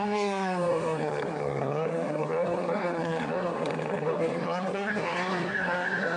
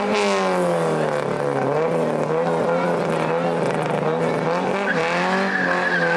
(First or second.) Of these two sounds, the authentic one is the second